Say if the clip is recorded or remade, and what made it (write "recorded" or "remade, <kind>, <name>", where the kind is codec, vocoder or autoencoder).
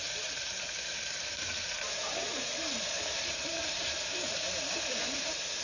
remade, vocoder, BigVGAN v2